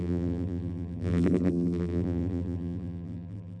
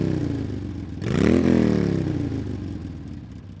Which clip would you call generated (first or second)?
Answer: first